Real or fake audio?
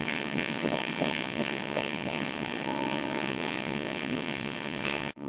fake